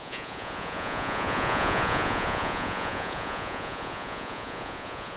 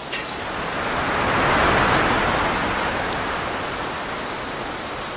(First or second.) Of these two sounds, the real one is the second